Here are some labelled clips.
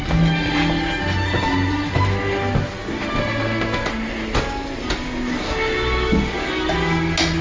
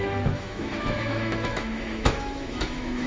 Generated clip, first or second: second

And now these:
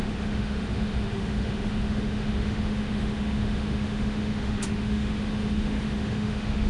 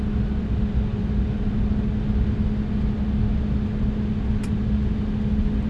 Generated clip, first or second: first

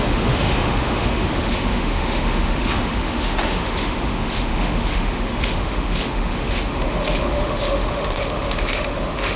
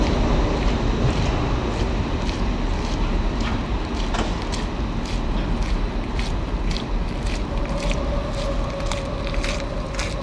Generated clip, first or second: first